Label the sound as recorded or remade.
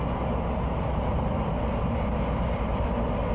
recorded